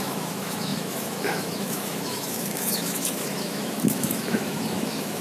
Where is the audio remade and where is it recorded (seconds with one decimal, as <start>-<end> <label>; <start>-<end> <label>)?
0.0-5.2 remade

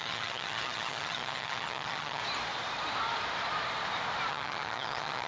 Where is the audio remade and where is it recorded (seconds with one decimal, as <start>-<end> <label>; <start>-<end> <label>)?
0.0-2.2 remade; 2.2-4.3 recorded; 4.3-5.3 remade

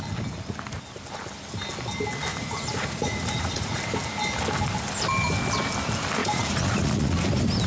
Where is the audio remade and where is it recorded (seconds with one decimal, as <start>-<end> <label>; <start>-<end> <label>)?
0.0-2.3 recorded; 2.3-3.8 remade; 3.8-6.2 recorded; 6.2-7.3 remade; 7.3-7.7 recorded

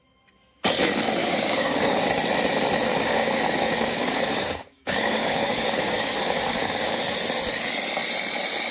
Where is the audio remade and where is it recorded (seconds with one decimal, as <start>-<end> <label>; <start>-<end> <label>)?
0.0-1.2 recorded; 1.2-2.0 remade; 2.0-2.9 recorded; 2.9-7.0 remade; 7.0-8.7 recorded

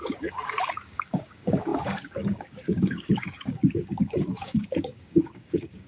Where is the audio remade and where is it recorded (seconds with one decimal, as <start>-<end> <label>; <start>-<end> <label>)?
0.0-5.9 remade